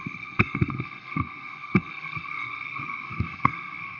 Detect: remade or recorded remade